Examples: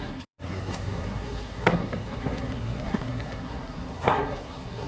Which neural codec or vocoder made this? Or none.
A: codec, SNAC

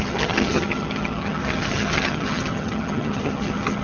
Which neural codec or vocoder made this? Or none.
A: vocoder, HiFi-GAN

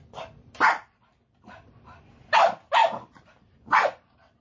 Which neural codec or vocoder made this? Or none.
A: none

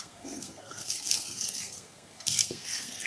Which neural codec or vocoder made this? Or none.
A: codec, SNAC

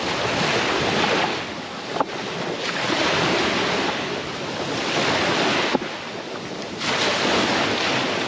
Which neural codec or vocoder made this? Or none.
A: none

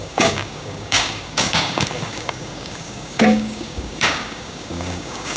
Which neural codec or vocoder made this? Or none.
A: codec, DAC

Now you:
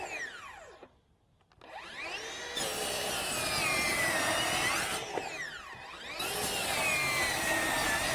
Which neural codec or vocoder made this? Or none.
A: none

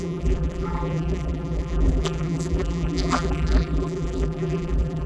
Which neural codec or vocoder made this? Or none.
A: vocoder, BigVGAN v2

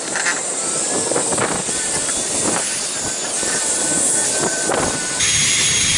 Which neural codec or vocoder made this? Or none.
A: none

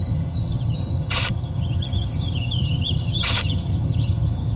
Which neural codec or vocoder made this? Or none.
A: vocoder, HiFi-GAN